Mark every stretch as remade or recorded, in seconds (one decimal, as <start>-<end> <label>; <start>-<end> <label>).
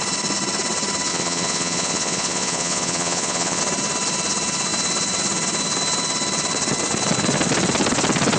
0.0-1.1 recorded; 1.1-3.6 remade; 3.6-8.4 recorded